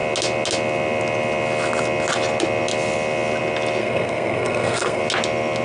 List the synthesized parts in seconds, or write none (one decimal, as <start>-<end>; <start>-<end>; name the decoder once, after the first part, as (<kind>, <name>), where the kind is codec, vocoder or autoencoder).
3.8-5.0 (codec, SNAC)